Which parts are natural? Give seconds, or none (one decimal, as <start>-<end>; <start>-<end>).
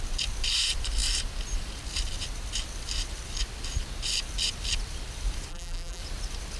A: 0.0-5.5; 6.0-6.6